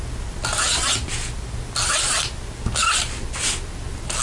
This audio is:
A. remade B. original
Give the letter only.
B